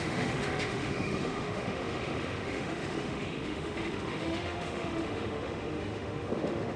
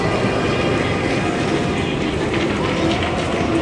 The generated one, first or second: first